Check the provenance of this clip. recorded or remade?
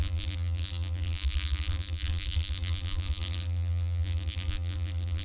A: remade